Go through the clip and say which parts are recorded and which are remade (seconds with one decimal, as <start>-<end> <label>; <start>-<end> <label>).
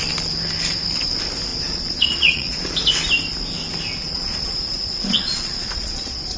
0.0-1.5 recorded; 1.5-2.9 remade; 2.9-4.0 recorded; 4.0-6.4 remade